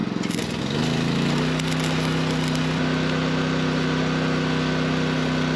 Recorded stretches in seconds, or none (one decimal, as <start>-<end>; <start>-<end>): 0.0-5.6